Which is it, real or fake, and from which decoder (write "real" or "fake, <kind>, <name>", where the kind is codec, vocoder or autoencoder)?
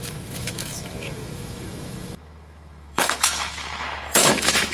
fake, autoencoder, DAC-VAE